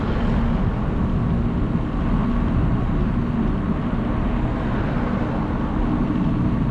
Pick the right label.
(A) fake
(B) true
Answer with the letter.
B